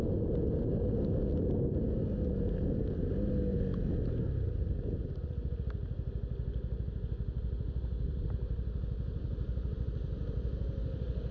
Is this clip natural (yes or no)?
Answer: yes